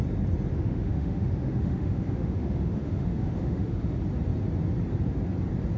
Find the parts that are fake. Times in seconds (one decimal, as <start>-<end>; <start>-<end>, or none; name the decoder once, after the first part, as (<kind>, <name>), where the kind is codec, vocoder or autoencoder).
0.5-4.0 (autoencoder, DAC-VAE)